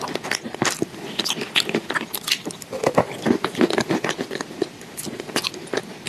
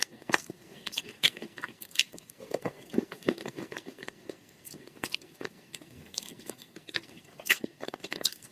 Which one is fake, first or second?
second